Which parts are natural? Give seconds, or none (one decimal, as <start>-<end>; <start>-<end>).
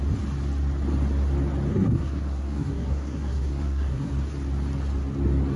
0.0-1.7; 4.1-5.6